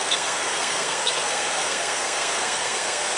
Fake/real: fake